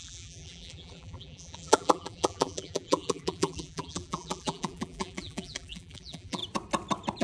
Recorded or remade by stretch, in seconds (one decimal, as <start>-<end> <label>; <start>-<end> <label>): 0.0-6.4 remade; 6.4-7.2 recorded